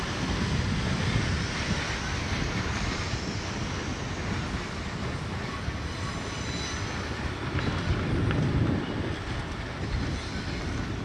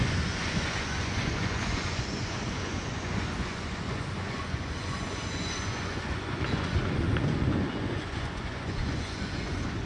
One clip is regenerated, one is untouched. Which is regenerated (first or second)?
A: second